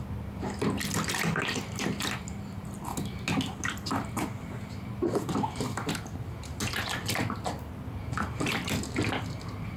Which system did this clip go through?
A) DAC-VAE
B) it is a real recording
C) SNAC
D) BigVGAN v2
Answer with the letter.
B